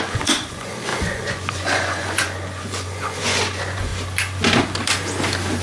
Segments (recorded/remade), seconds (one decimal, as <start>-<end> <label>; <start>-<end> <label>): 0.0-3.9 remade; 3.9-5.6 recorded